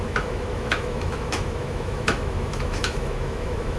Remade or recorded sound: remade